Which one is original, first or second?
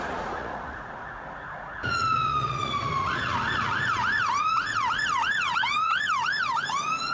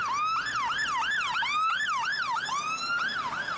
second